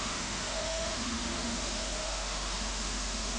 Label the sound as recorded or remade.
remade